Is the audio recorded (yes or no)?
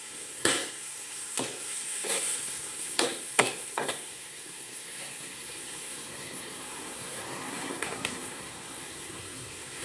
no